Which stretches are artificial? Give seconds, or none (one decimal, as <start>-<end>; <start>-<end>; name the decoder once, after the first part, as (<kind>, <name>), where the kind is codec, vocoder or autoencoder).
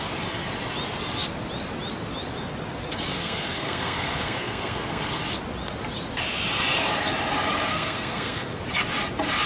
3.1-5.2 (codec, SNAC); 7.7-8.6